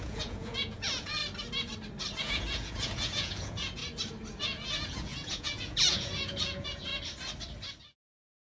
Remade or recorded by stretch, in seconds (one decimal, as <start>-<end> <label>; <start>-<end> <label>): 0.0-1.2 remade; 1.2-2.2 recorded; 2.2-3.8 remade; 3.8-4.4 recorded; 4.4-6.9 remade; 6.9-7.8 recorded; 7.8-8.5 remade